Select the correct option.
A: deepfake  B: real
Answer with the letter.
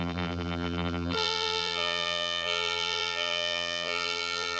A